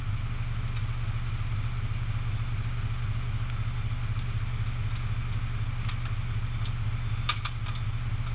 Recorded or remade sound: recorded